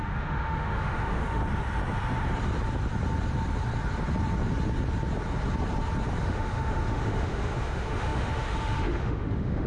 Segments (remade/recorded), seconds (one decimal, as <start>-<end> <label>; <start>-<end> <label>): 0.0-1.4 remade; 1.4-6.2 recorded; 6.2-9.7 remade